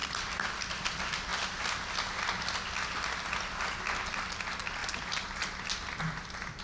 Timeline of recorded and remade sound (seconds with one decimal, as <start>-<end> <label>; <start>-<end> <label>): 0.0-6.6 recorded